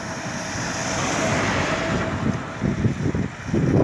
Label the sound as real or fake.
fake